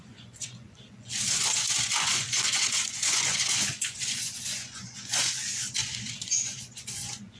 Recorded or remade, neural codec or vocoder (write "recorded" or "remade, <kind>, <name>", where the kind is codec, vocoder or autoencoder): remade, vocoder, Vocos